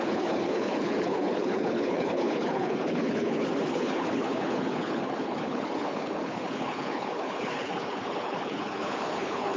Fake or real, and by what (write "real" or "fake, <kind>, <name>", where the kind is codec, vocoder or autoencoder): fake, codec, HILCodec